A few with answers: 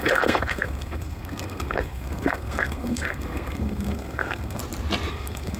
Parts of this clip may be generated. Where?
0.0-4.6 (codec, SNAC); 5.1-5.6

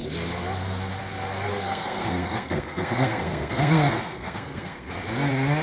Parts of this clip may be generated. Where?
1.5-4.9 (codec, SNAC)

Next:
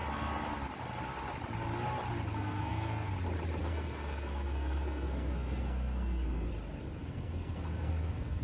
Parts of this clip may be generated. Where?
2.3-3.1 (codec, SNAC); 3.6-6.5; 7.0-8.4

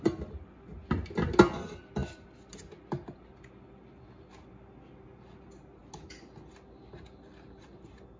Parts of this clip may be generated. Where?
none

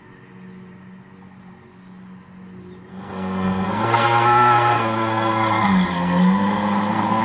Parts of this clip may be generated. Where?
2.9-7.2 (codec, SNAC)